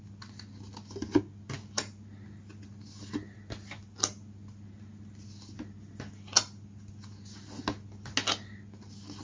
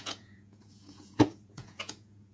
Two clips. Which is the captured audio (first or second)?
first